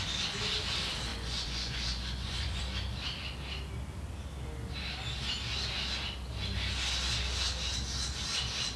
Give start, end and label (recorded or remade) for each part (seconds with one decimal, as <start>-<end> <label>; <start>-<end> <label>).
0.0-1.1 recorded; 1.1-2.6 remade; 2.6-8.8 recorded